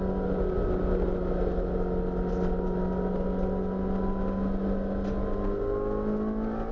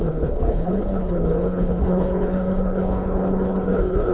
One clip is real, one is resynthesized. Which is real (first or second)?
first